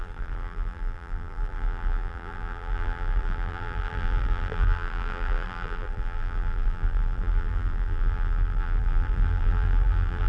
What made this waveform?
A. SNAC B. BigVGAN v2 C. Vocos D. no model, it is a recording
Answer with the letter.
B